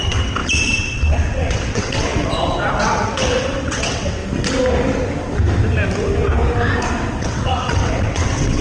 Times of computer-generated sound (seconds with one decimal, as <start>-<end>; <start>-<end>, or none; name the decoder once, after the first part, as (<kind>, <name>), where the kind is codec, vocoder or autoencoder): 0.0-4.2 (vocoder, WaveNeXt); 7.2-8.6